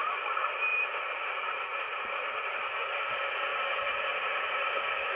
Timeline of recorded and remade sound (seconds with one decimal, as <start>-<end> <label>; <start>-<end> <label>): 0.0-0.7 recorded; 0.7-3.1 remade; 3.1-3.5 recorded; 3.5-4.8 remade; 4.8-5.2 recorded